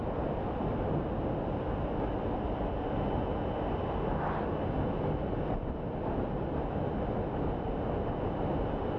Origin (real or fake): real